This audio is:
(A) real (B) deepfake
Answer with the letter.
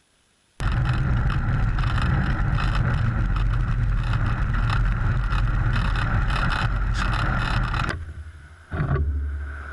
A